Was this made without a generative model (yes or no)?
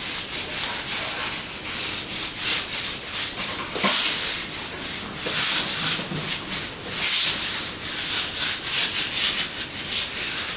yes